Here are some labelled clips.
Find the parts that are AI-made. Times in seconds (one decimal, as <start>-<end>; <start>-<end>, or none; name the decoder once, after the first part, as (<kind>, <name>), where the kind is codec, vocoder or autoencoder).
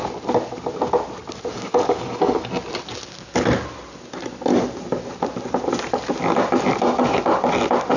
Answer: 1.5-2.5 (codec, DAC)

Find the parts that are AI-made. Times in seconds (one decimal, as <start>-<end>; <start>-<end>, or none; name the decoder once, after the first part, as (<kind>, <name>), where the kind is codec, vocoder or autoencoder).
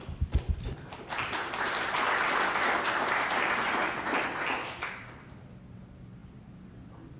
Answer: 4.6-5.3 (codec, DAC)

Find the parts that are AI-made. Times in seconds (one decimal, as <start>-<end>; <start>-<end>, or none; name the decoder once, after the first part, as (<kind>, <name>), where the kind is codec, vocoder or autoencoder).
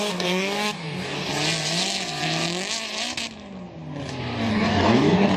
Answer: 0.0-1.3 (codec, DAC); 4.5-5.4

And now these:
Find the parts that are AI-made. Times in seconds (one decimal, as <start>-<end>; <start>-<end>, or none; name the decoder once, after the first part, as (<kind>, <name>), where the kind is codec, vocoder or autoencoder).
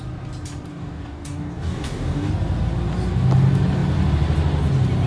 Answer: 0.7-2.3 (codec, DAC)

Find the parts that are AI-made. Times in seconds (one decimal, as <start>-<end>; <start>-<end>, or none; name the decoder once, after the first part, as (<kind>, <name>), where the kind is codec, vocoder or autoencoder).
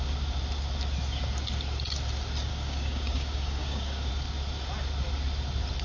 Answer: 2.5-4.1 (codec, DAC)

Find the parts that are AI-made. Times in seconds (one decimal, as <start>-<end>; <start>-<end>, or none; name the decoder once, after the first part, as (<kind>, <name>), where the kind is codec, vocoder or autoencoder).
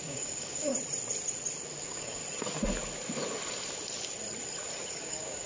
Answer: 0.0-0.7 (codec, DAC); 1.8-2.2; 5.0-5.5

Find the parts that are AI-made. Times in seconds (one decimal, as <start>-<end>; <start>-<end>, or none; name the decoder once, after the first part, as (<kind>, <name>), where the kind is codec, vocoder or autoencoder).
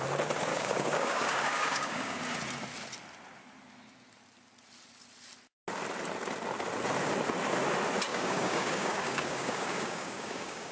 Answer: 0.5-2.2 (codec, DAC); 8.1-10.7